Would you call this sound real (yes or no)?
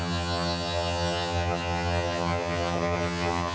no